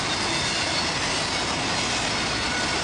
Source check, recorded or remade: recorded